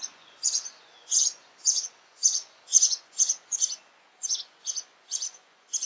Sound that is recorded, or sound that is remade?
remade